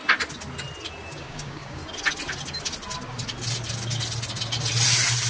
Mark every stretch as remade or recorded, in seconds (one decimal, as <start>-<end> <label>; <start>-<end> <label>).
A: 0.0-1.2 recorded; 1.2-1.8 remade; 1.8-5.3 recorded